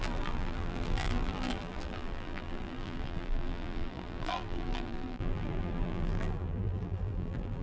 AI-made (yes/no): yes